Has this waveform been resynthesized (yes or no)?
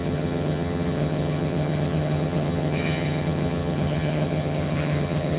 yes